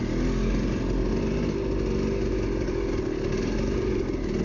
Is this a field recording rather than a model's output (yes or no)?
yes